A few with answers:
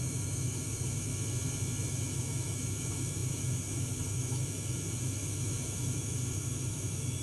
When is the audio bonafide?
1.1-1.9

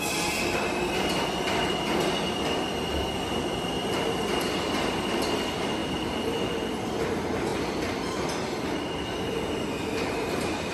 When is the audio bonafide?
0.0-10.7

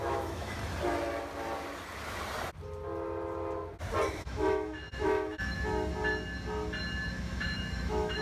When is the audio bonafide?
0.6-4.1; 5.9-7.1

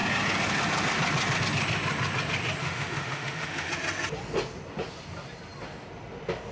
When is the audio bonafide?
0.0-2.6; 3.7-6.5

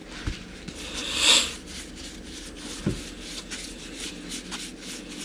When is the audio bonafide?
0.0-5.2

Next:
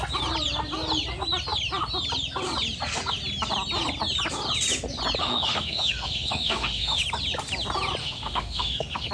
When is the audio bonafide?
0.0-5.2; 7.0-8.0

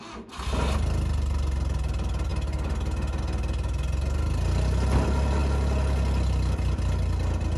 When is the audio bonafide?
0.0-7.6

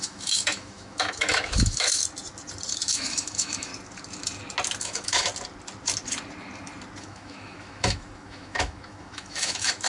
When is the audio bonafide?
2.0-2.7; 3.7-4.8; 5.3-7.0